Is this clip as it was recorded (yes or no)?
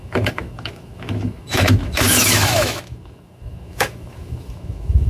no